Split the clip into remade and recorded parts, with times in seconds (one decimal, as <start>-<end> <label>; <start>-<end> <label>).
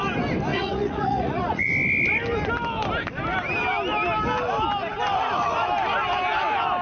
0.0-0.5 recorded; 0.5-1.7 remade; 1.7-6.8 recorded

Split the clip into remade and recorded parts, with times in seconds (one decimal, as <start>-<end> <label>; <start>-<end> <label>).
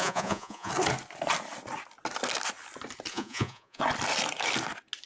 0.0-0.7 remade; 0.7-3.1 recorded; 3.1-3.8 remade; 3.8-5.1 recorded